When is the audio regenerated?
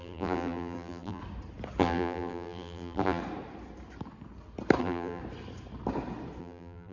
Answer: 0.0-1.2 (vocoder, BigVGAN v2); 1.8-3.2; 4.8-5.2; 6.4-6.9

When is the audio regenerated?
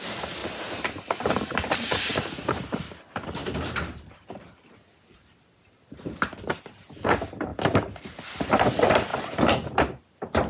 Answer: 0.4-2.6 (vocoder, BigVGAN v2)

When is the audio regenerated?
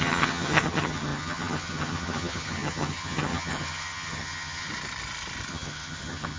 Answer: 0.0-4.7 (vocoder, HiFi-GAN); 5.5-6.4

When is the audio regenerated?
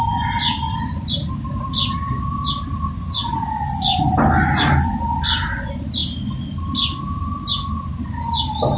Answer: none